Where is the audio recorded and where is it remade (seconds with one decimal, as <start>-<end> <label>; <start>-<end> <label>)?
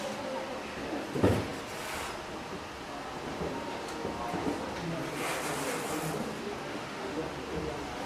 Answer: 0.0-6.7 recorded; 6.7-7.2 remade; 7.2-8.1 recorded